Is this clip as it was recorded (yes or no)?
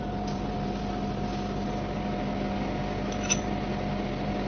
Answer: yes